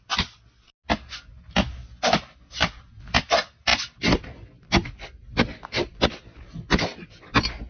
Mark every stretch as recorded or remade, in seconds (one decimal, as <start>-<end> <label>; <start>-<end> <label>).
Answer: 0.0-7.7 recorded